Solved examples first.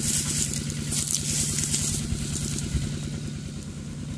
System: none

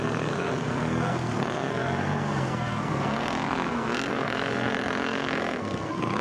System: codec, SNAC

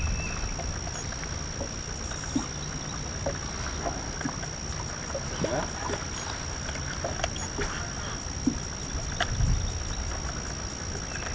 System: none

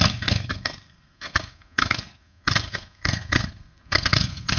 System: codec, SNAC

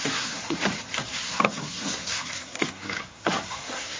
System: codec, SNAC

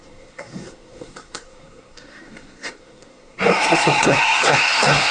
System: codec, SNAC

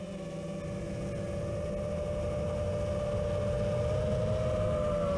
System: none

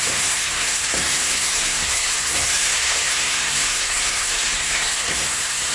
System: codec, SNAC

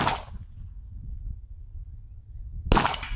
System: none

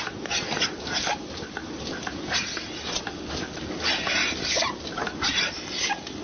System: none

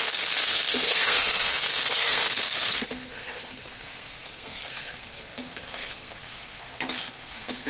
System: codec, SNAC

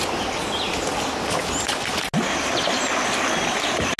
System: none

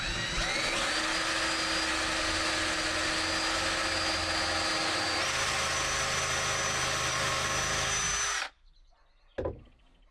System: none